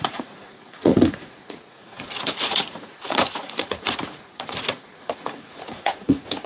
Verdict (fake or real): fake